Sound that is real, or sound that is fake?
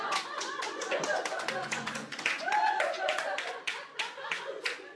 fake